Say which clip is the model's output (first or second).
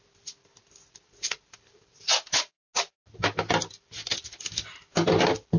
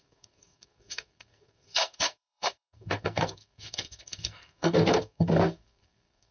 second